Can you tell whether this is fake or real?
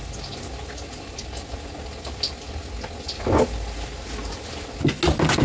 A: real